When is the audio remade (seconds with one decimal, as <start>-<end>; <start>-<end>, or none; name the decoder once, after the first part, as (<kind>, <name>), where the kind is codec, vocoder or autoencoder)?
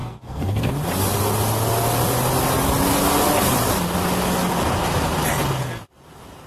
0.0-0.7 (codec, SNAC)